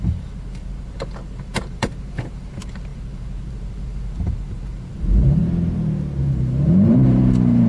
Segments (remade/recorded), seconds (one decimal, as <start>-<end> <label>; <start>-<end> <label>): 0.0-5.4 remade; 5.4-6.2 recorded; 6.2-7.7 remade